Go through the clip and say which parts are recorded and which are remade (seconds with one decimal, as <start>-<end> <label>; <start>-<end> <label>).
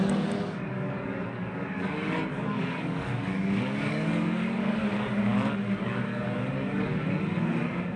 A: 0.0-8.0 remade